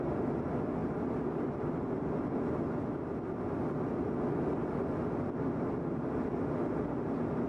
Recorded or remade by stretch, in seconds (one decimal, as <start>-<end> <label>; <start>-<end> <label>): 0.0-7.5 recorded